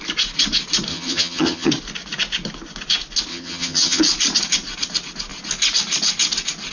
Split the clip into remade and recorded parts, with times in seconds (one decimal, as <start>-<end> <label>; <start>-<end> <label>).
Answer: 0.0-0.9 recorded; 0.9-1.7 remade; 1.7-3.3 recorded; 3.3-4.0 remade; 4.0-6.7 recorded